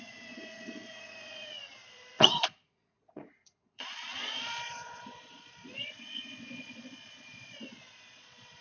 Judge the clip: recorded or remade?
remade